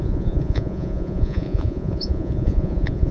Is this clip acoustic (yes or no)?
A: no